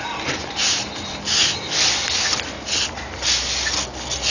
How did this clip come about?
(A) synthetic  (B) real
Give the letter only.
B